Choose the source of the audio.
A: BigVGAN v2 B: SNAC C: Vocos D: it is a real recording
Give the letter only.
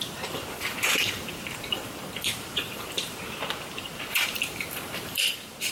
A